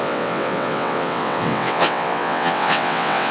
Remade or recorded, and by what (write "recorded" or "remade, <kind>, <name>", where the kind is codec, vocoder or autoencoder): remade, vocoder, WaveNeXt